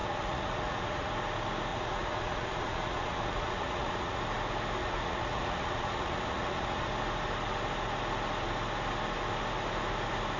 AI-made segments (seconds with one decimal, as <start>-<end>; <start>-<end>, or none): 0.0-1.1; 1.7-4.2; 4.8-6.9